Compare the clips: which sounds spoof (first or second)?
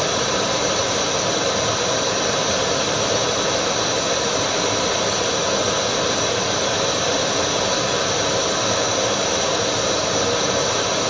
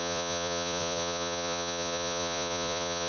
second